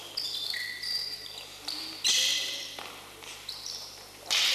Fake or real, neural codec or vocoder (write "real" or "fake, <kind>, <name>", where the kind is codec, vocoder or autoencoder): real